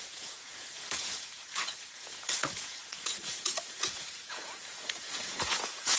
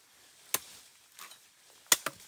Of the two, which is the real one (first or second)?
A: second